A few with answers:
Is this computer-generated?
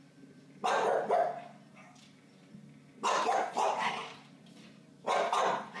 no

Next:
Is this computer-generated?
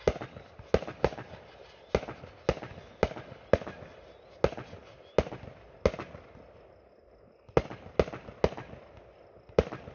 no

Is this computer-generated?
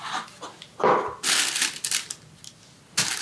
no